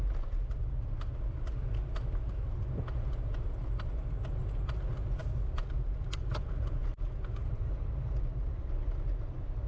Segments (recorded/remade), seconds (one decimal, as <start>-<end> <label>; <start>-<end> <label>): 0.0-9.7 recorded